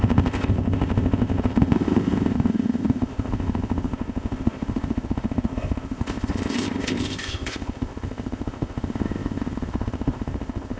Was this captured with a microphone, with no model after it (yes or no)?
no